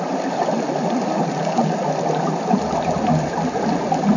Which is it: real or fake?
real